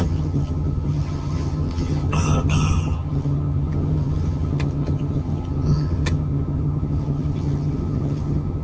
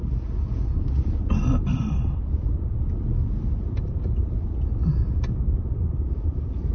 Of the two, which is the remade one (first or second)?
first